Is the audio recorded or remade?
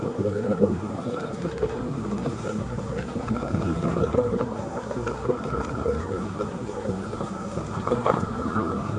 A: remade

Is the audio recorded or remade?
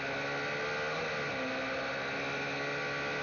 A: recorded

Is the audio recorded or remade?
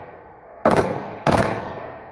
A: remade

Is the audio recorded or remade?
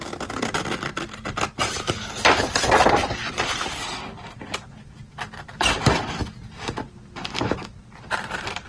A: recorded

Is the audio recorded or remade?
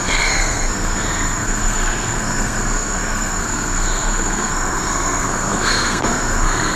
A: remade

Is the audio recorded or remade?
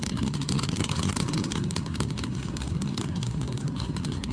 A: remade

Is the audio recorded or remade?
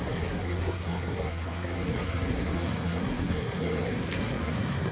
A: remade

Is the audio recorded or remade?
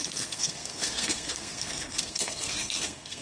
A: remade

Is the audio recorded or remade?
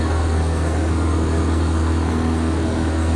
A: remade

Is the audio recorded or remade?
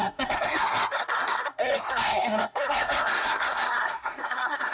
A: remade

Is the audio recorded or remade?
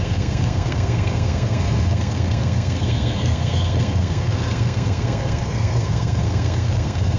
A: remade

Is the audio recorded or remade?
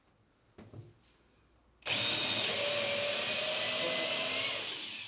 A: recorded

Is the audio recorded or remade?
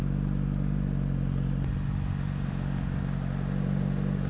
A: recorded